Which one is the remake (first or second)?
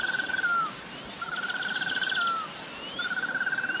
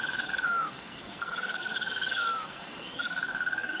second